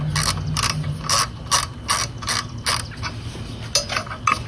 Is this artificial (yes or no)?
no